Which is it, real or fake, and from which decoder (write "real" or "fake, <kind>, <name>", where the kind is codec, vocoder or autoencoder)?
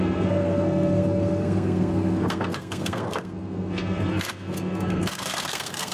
fake, codec, SNAC